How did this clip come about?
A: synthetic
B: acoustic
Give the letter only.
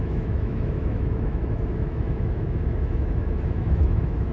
A